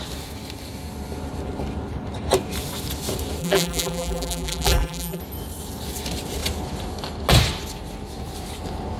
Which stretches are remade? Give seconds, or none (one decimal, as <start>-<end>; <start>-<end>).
3.4-5.2